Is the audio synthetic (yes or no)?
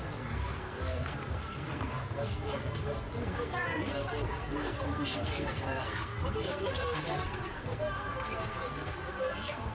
yes